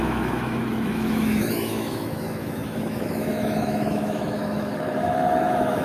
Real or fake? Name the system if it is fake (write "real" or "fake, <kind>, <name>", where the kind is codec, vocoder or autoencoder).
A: fake, autoencoder, DAC-VAE